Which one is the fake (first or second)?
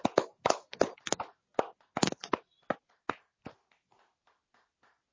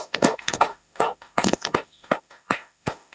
second